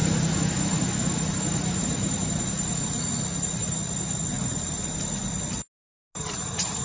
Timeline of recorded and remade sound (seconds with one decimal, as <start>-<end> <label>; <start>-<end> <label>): 0.0-2.8 recorded; 2.8-3.6 remade; 3.6-6.3 recorded; 6.3-6.8 remade